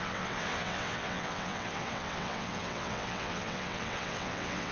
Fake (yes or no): yes